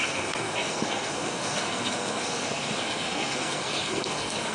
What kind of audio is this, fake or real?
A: fake